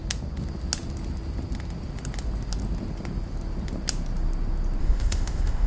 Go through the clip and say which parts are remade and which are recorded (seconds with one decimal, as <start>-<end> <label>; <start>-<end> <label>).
0.0-4.8 recorded; 4.8-5.7 remade